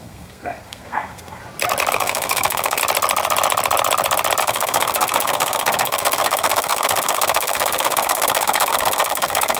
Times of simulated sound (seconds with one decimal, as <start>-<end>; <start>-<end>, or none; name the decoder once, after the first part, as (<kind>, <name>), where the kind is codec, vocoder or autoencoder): 0.0-1.4 (codec, SNAC); 1.9-2.8; 4.4-9.6